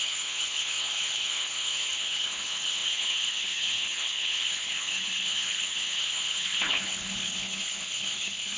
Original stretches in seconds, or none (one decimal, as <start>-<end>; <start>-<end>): none